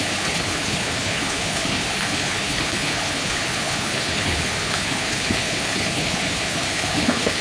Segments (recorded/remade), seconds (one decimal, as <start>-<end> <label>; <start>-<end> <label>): 0.0-7.4 remade